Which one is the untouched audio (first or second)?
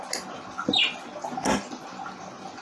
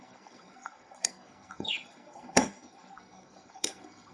first